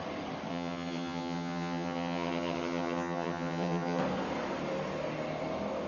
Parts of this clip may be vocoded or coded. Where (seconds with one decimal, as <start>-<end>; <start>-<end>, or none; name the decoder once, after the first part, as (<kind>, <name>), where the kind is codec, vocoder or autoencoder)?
0.5-4.0 (vocoder, HiFi-GAN)